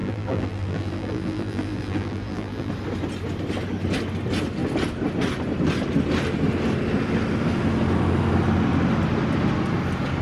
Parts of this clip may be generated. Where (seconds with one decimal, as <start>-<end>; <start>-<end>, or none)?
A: 0.0-2.7